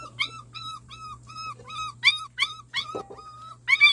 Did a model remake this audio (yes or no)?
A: no